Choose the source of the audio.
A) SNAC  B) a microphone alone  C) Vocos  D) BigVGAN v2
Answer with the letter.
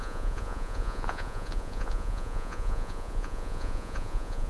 C